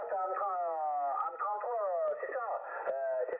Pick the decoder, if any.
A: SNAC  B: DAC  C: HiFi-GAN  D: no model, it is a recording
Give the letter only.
D